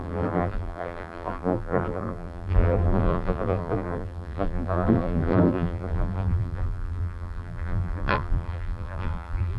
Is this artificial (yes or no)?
yes